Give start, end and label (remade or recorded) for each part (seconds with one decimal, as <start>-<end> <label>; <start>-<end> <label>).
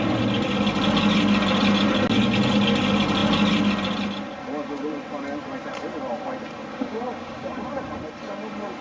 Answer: 0.0-6.7 recorded; 6.7-7.7 remade; 7.7-8.8 recorded